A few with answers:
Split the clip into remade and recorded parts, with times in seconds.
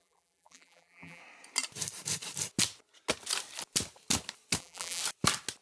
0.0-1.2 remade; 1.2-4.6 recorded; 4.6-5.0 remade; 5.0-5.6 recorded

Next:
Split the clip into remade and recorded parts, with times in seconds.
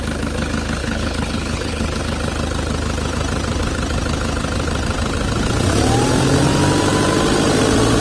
0.0-0.8 recorded; 0.8-2.0 remade; 2.0-8.0 recorded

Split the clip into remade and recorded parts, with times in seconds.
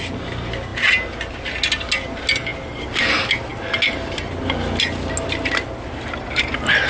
0.0-6.9 recorded